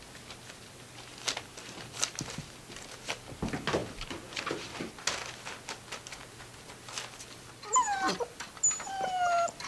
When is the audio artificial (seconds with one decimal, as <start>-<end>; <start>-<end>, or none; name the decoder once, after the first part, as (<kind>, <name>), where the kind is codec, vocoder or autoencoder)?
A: none